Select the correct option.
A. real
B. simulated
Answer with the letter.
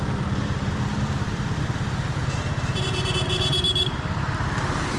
B